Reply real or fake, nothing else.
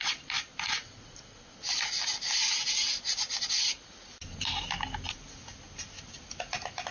real